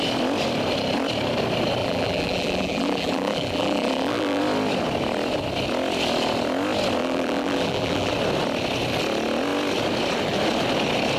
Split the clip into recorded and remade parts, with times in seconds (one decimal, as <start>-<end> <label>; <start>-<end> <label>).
0.0-1.8 recorded; 1.8-4.4 remade; 4.4-7.0 recorded; 7.0-8.1 remade; 8.1-11.2 recorded